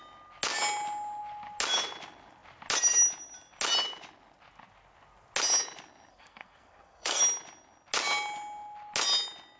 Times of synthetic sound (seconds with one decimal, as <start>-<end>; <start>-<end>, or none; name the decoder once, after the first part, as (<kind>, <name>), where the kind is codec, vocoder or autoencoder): 6.1-7.2 (codec, SNAC)